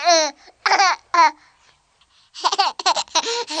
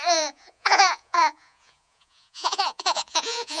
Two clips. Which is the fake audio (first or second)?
second